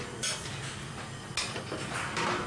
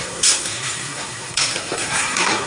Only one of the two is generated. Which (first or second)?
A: second